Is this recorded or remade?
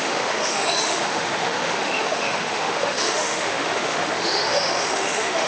remade